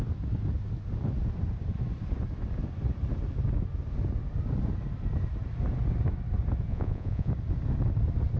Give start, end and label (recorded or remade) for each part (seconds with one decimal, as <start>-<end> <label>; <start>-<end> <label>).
0.0-6.7 recorded; 6.7-7.3 remade; 7.3-8.4 recorded